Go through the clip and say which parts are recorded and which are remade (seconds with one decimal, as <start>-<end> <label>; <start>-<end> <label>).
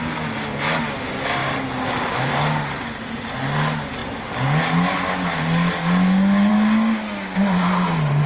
0.0-8.3 recorded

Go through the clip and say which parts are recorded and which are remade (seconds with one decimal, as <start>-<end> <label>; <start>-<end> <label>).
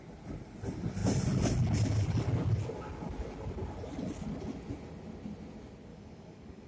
0.0-5.9 recorded; 5.9-6.7 remade